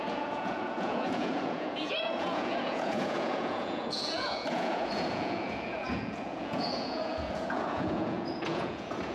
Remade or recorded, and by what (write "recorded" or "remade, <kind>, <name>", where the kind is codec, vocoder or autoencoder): remade, vocoder, Vocos